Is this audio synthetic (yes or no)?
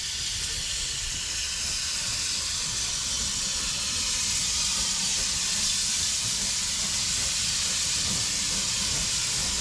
no